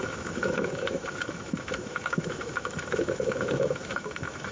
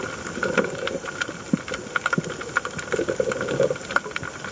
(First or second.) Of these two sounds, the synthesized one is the first